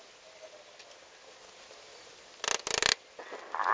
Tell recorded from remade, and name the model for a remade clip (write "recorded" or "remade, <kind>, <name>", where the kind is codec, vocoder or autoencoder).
recorded